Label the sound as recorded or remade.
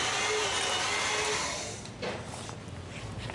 recorded